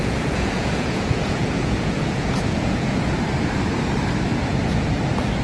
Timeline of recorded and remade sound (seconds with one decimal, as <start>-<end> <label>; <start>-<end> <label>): 0.0-3.1 remade; 3.1-4.3 recorded; 4.3-5.0 remade; 5.0-5.4 recorded